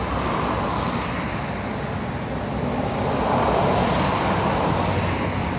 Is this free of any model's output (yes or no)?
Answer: yes